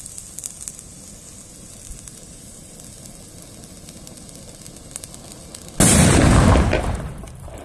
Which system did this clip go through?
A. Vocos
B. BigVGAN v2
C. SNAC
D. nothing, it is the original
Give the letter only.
D